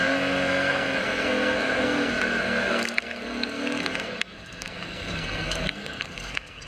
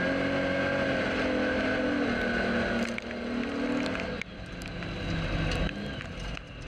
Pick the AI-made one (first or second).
first